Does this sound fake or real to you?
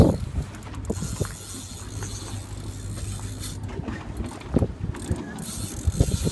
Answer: real